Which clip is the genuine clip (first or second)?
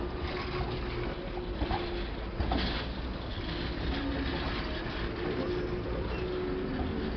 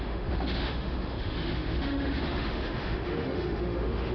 first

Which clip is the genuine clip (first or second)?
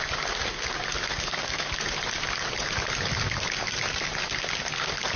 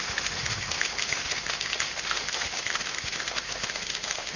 first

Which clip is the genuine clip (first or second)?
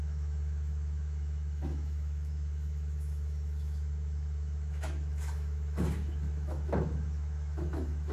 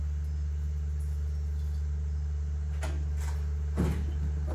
second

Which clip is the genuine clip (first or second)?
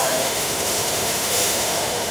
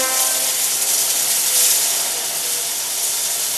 second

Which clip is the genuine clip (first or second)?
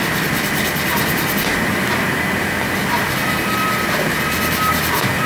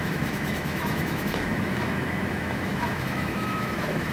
first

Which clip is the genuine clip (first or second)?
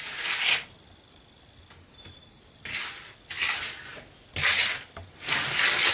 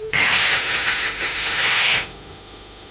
first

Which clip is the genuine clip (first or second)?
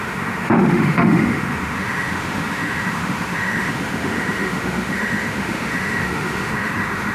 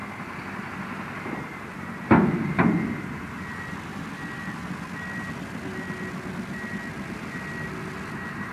second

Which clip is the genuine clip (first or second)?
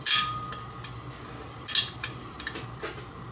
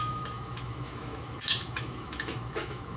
first